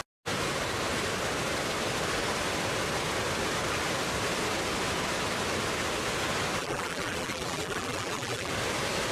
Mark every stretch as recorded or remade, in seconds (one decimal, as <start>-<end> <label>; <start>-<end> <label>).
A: 0.0-6.6 recorded; 6.6-8.5 remade; 8.5-9.1 recorded